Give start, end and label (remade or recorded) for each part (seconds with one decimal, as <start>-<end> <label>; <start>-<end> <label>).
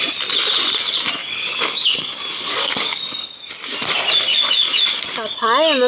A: 0.0-1.2 recorded; 1.2-3.5 remade; 3.5-4.3 recorded; 4.3-5.0 remade; 5.0-5.9 recorded